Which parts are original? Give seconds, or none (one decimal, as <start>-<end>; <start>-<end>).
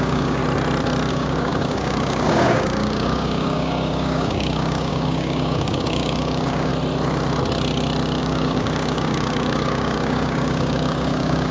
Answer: 0.4-1.1; 6.7-8.2